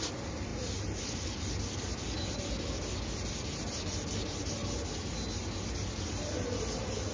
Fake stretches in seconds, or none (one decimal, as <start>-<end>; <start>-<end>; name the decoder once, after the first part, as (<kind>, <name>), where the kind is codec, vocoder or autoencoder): 0.5-1.1 (vocoder, BigVGAN v2)